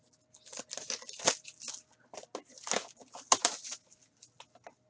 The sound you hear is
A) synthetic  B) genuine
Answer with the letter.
B